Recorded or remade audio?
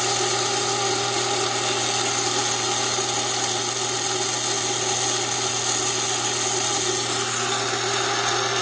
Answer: recorded